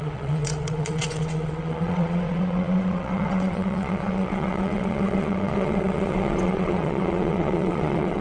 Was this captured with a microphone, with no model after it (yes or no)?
no